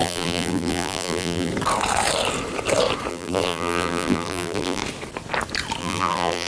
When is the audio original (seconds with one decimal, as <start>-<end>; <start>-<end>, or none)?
1.5-3.1; 4.8-5.8